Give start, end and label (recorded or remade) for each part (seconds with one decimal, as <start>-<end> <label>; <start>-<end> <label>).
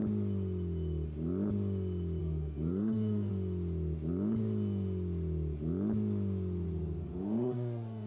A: 0.0-2.2 recorded; 2.2-3.3 remade; 3.3-7.0 recorded; 7.0-8.1 remade